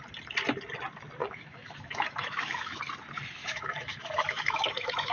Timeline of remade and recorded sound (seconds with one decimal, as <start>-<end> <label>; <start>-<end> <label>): 0.0-1.2 recorded; 1.2-2.8 remade; 2.8-3.4 recorded; 3.4-5.1 remade